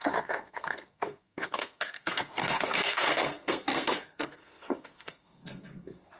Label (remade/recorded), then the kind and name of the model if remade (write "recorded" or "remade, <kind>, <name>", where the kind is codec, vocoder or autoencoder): remade, codec, SNAC